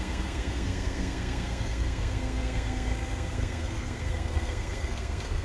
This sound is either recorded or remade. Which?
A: remade